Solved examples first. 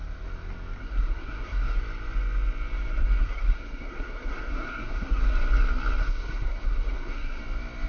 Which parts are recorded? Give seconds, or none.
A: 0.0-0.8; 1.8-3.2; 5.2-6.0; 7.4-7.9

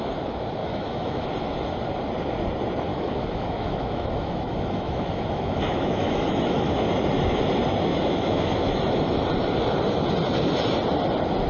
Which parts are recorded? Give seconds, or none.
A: 0.0-0.6; 1.3-2.9; 6.8-7.9; 8.8-11.5

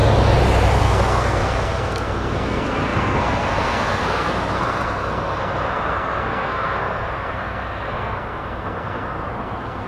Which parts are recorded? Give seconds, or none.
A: 0.0-0.8

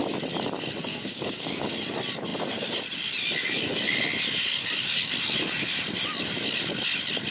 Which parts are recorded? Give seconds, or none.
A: 0.0-0.9; 1.7-7.3

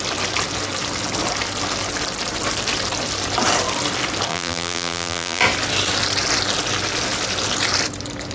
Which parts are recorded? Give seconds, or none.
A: 0.0-4.3; 5.4-8.3

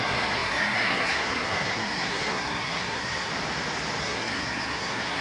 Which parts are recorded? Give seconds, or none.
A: 3.3-4.0

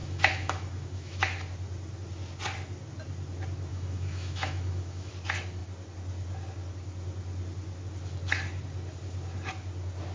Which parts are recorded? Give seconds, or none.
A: 1.2-3.7; 5.1-10.1